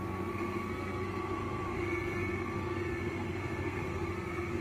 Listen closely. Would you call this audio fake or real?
fake